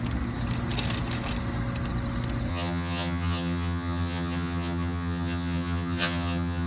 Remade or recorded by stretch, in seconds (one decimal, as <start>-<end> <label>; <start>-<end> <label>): 0.0-2.5 recorded; 2.5-6.7 remade